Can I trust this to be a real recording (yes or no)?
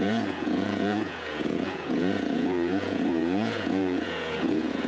no